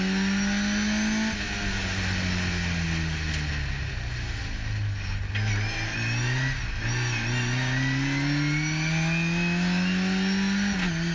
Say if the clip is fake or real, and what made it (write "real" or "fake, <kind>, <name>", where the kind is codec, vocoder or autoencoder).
real